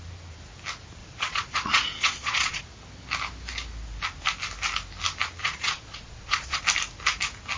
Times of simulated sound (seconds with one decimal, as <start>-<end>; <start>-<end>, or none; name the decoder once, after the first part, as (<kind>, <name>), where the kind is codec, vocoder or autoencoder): 1.0-2.6 (vocoder, Vocos); 5.4-6.6